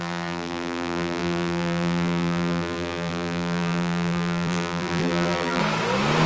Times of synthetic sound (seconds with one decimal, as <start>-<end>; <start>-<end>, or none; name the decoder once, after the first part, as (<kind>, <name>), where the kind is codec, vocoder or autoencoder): 0.0-5.6 (vocoder, BigVGAN v2)